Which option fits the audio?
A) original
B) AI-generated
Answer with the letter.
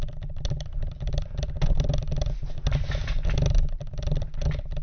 A